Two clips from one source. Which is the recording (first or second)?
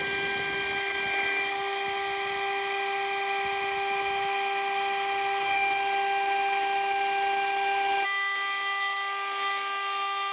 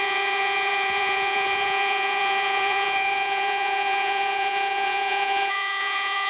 first